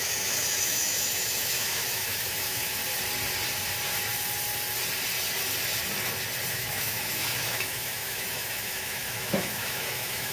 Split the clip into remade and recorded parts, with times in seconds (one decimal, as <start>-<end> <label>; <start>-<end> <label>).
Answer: 0.0-2.8 remade; 2.8-6.5 recorded; 6.5-10.3 remade